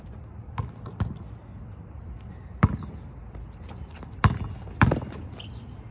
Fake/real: real